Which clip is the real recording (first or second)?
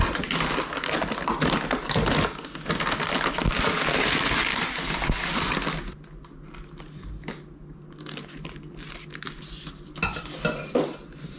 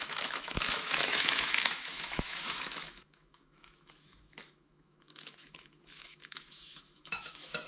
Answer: first